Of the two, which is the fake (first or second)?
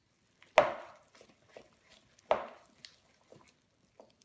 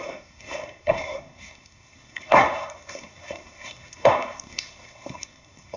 second